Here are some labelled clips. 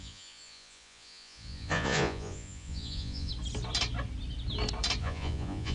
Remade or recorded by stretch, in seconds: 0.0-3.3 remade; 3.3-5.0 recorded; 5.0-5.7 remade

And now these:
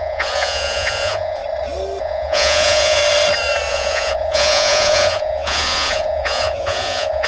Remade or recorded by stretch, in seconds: 0.0-1.4 remade; 1.4-2.0 recorded; 2.0-3.0 remade; 3.0-3.7 recorded; 3.7-7.3 remade

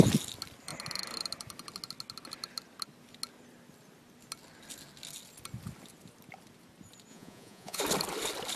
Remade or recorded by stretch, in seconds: 0.0-7.1 recorded; 7.1-7.8 remade; 7.8-8.6 recorded